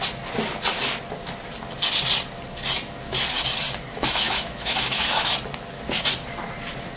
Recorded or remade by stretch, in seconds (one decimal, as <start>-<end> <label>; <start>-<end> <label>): 0.0-3.9 recorded; 3.9-5.3 remade; 5.3-7.0 recorded